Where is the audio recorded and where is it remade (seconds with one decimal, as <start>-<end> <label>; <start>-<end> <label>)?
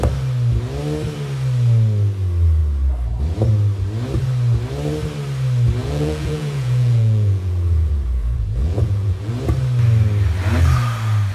0.0-5.8 recorded; 5.8-9.3 remade; 9.3-11.3 recorded